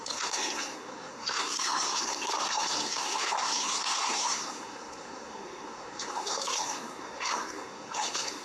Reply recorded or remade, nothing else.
remade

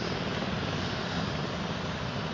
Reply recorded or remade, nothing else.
recorded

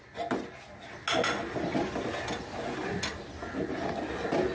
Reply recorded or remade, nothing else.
recorded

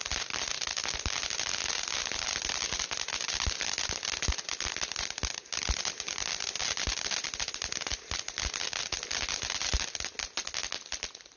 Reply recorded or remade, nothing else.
recorded